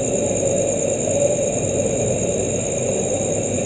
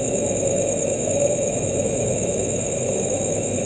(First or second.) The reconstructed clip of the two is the second